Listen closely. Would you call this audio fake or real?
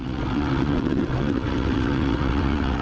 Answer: fake